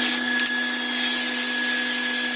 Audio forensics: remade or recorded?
recorded